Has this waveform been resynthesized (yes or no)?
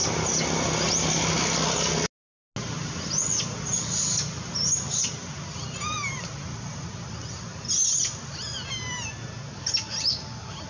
no